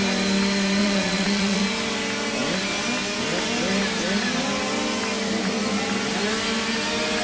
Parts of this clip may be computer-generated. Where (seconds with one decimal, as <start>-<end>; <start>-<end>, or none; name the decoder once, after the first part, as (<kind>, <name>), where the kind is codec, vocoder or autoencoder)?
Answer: 0.8-1.6 (vocoder, Vocos)